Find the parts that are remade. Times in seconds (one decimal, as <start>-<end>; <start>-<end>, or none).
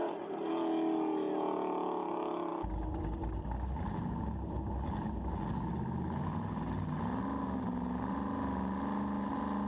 none